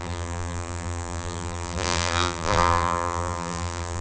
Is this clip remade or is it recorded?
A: remade